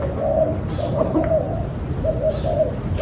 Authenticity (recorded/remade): recorded